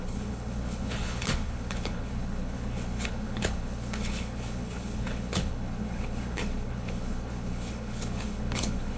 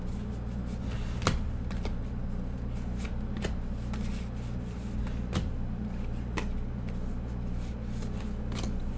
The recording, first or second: second